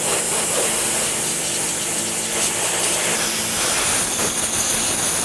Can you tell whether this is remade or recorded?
recorded